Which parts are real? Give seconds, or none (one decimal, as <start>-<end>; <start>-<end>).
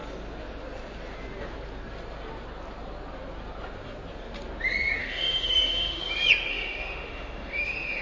0.0-5.0; 6.0-6.5